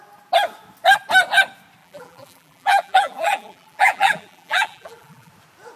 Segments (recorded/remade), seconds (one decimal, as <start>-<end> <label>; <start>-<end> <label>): 0.0-1.8 recorded; 1.8-5.3 remade; 5.3-5.8 recorded